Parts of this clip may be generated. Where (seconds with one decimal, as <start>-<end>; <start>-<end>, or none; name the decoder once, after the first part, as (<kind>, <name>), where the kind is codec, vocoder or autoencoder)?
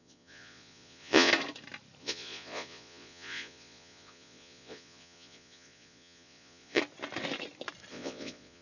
0.0-1.3 (vocoder, Vocos); 2.0-6.8; 7.9-8.6